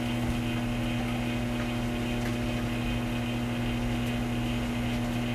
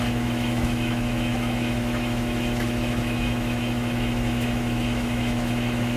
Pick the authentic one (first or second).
first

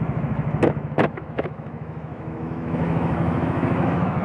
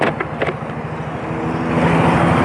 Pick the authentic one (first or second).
second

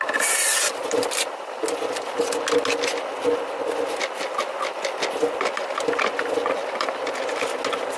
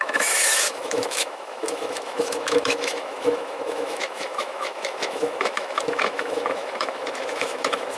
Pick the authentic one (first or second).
first